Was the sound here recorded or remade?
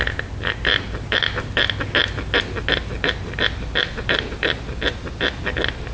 recorded